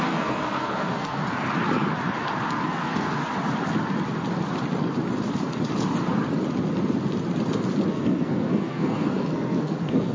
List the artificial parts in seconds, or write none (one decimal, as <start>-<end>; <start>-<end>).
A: 0.0-1.2; 2.5-3.2; 7.9-10.1